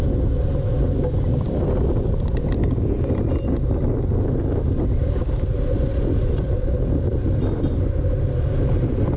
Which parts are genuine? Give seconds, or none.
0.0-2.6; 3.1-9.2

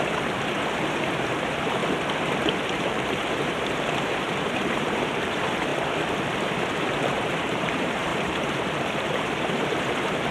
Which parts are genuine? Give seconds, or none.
1.8-2.8; 5.7-7.0

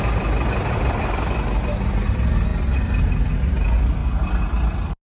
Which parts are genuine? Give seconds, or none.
0.0-5.2

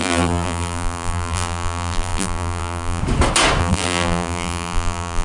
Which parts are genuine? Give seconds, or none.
3.0-3.6

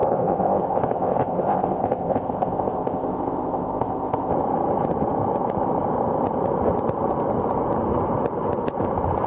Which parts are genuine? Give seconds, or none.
4.3-9.3

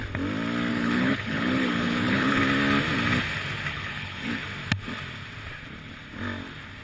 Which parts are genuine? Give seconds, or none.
0.0-0.7; 2.4-3.7; 4.4-6.8

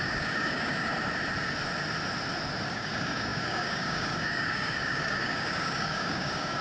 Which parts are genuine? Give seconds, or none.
0.9-2.7